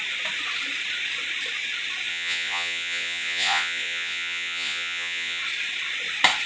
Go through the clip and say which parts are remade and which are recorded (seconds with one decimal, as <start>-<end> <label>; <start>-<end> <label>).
0.0-2.1 recorded; 2.1-5.4 remade; 5.4-6.5 recorded